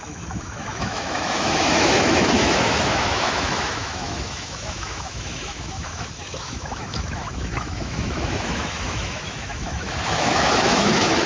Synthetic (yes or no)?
yes